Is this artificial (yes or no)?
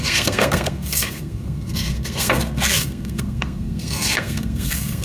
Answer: yes